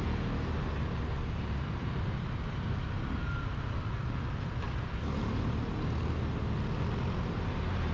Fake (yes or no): no